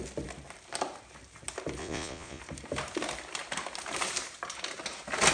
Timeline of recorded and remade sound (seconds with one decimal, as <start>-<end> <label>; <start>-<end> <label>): 0.0-1.8 recorded; 1.8-2.4 remade; 2.4-5.3 recorded